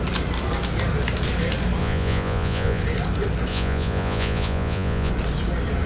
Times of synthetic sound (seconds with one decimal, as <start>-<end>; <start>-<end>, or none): 1.8-2.8; 3.5-5.1